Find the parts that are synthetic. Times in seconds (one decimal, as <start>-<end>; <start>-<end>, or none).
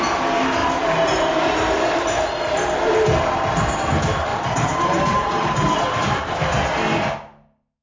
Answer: 0.6-3.9; 4.3-6.0